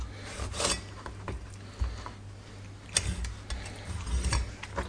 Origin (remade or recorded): recorded